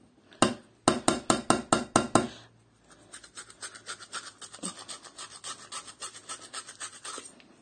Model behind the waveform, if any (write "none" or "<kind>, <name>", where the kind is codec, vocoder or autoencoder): none